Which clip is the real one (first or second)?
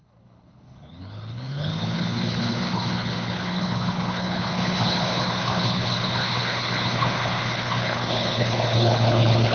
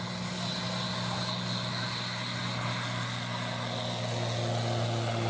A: second